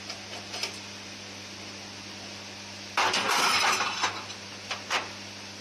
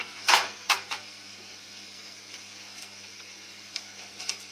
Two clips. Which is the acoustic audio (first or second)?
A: first